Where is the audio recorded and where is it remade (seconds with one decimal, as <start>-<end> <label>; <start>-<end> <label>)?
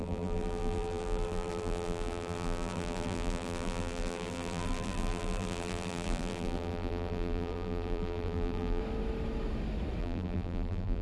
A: 0.0-8.8 remade; 8.8-10.0 recorded; 10.0-11.0 remade